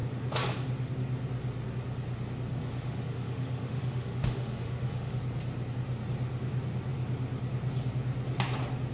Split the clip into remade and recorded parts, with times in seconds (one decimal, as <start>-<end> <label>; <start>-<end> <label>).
0.0-2.6 recorded; 2.6-5.2 remade; 5.2-8.9 recorded